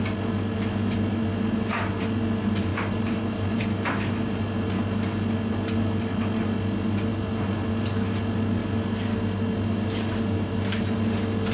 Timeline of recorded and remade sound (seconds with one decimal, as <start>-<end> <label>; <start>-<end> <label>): 0.0-11.5 recorded